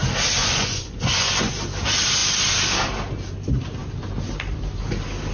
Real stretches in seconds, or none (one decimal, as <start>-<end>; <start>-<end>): 0.0-0.4; 1.5-5.3